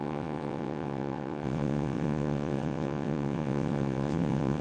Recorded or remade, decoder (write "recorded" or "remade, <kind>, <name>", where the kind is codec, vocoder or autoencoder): remade, vocoder, WaveNeXt